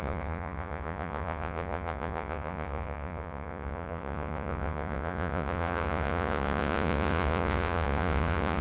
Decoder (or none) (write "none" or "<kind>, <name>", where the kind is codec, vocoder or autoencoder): vocoder, Vocos